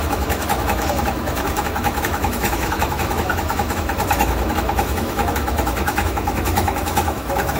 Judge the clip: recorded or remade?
remade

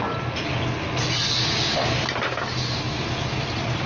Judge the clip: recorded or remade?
recorded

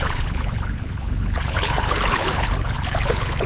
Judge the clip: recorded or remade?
remade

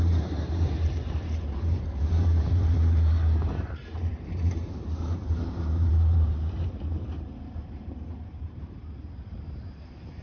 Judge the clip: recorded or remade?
remade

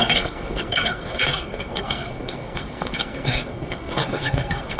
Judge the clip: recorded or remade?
remade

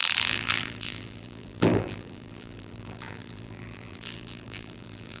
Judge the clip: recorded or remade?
remade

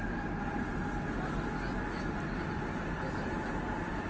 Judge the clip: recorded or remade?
recorded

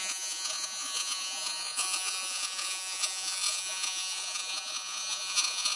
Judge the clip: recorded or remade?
remade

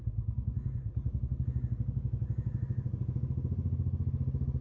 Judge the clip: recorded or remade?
recorded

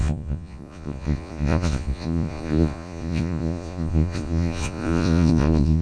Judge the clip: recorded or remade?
remade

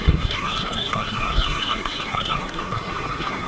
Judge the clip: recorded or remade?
remade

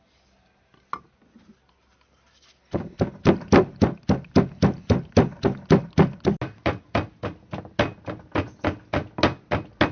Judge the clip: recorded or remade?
recorded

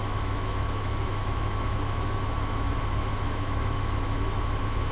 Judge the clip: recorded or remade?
remade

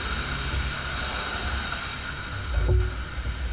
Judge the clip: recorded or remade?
recorded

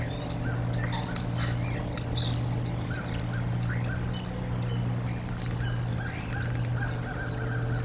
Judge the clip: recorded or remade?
recorded